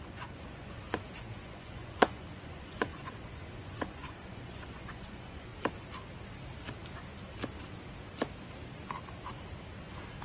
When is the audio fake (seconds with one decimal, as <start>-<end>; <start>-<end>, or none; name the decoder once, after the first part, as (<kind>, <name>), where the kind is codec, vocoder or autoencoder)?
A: 0.0-5.5 (vocoder, Vocos)